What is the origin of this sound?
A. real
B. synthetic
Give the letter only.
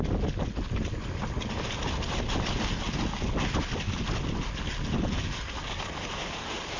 A